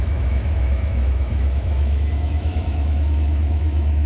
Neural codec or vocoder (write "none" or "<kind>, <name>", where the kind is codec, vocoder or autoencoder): autoencoder, DAC-VAE